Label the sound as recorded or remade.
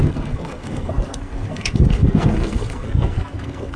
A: remade